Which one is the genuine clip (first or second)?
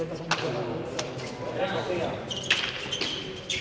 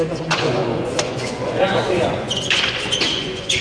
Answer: first